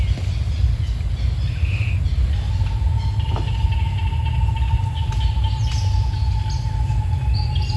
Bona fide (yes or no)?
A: yes